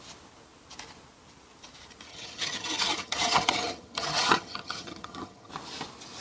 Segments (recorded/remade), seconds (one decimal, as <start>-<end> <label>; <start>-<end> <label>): 0.0-2.1 recorded; 2.1-5.5 remade; 5.5-6.2 recorded